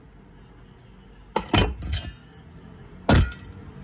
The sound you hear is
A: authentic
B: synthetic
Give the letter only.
A